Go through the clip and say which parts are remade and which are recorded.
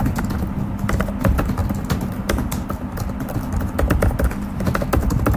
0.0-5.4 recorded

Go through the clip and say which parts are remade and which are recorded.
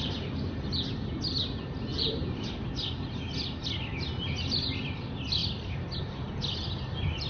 0.0-1.9 recorded; 1.9-2.7 remade; 2.7-7.3 recorded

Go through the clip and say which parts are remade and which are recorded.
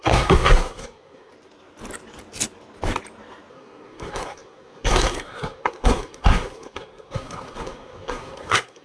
0.0-1.3 remade; 1.3-3.5 recorded; 3.5-8.8 remade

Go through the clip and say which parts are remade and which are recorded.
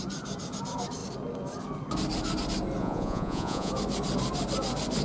0.0-2.8 recorded; 2.8-3.7 remade; 3.7-5.0 recorded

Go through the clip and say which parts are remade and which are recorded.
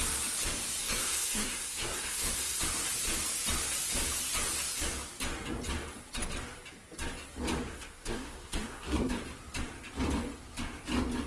0.0-0.8 recorded; 0.8-2.6 remade; 2.6-7.7 recorded; 7.7-9.1 remade; 9.1-11.3 recorded